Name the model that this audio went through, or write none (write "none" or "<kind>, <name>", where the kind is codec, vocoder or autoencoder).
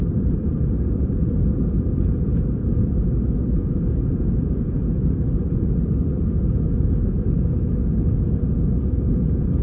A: vocoder, Vocos